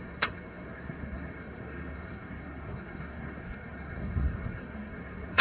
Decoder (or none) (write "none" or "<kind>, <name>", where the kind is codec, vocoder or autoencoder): codec, SNAC